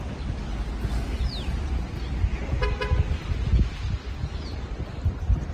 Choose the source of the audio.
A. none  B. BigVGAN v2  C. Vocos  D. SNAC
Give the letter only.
A